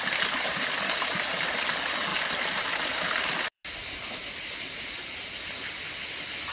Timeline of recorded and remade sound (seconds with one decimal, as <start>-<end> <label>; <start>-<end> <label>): 0.0-6.5 recorded